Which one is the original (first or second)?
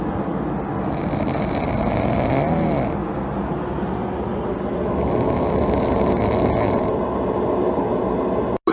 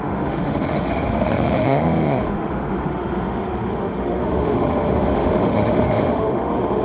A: first